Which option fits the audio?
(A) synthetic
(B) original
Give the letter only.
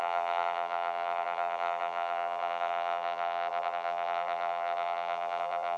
A